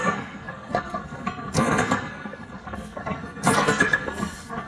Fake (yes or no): yes